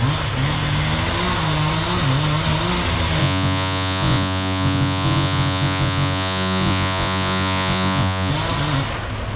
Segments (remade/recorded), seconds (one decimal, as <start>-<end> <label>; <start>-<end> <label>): 0.0-3.2 recorded; 3.2-8.3 remade; 8.3-9.4 recorded